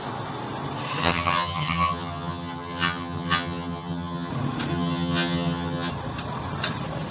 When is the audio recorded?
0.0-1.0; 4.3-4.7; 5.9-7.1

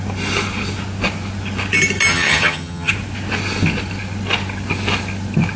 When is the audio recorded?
0.0-2.1; 2.9-5.6